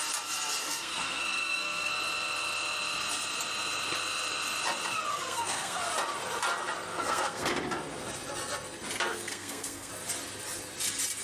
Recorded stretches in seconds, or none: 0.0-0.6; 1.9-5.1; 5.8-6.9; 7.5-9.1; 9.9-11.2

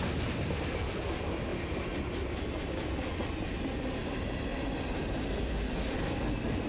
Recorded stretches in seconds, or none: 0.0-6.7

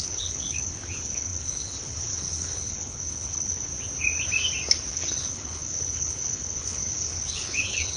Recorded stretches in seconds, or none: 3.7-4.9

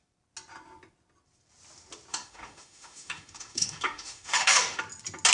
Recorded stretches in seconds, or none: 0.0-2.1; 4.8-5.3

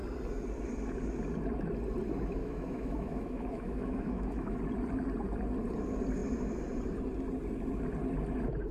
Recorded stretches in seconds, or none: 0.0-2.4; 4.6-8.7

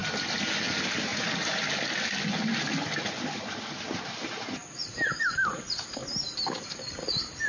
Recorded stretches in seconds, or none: 0.0-0.6; 1.1-3.7; 6.0-6.6

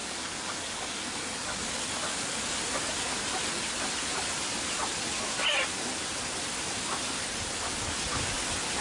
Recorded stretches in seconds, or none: 1.7-2.1; 2.6-8.8